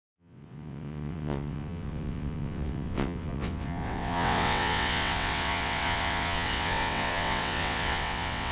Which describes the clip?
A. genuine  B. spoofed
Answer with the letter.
B